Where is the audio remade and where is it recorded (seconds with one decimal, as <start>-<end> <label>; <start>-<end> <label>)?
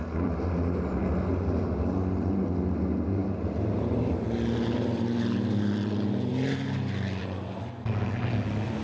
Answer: 0.0-8.8 recorded